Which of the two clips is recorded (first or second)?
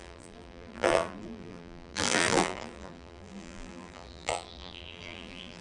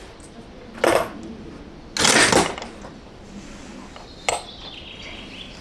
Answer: second